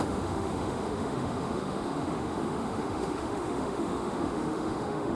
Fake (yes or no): yes